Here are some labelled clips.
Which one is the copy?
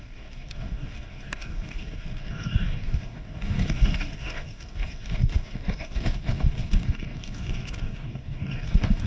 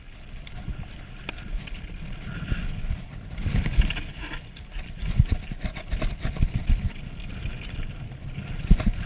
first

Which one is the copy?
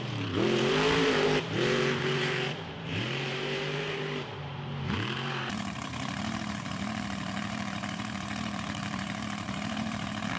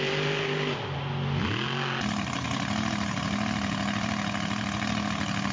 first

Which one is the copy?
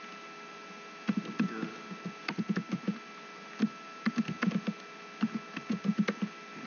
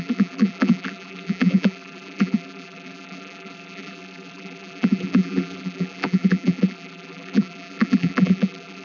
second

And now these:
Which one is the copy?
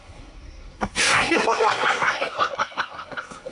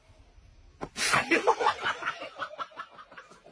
first